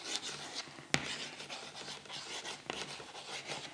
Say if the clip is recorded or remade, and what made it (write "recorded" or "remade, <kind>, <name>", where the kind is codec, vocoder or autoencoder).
recorded